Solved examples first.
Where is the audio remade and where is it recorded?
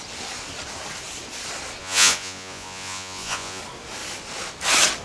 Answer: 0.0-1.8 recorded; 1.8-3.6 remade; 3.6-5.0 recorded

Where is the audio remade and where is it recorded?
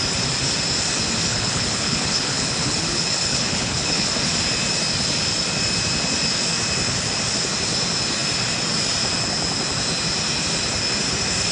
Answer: 0.0-1.3 recorded; 1.3-4.1 remade; 4.1-11.5 recorded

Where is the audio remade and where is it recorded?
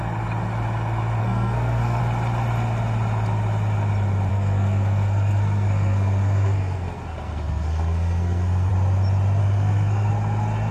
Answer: 0.0-1.2 recorded; 1.2-2.0 remade; 2.0-4.3 recorded; 4.3-8.7 remade; 8.7-9.4 recorded; 9.4-10.1 remade; 10.1-10.7 recorded